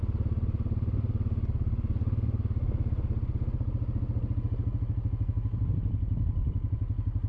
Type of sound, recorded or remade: recorded